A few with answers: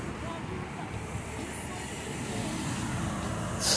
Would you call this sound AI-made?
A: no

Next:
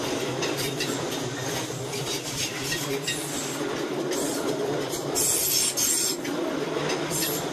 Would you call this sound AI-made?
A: no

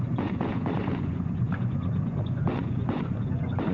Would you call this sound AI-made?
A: yes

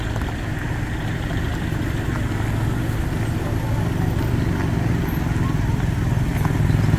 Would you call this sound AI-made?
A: no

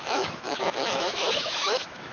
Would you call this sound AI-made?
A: yes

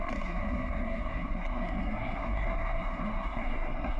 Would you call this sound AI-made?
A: yes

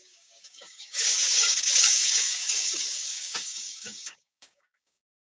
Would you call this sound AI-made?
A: yes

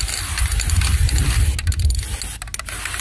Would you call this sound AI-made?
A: no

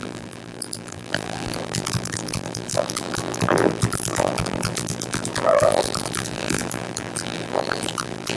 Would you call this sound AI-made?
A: yes